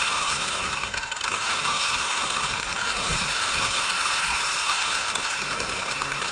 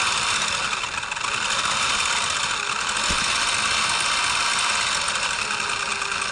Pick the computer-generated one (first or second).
first